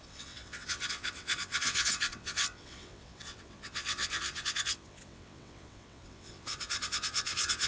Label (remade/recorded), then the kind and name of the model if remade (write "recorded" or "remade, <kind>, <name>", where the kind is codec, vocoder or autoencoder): remade, vocoder, WaveNeXt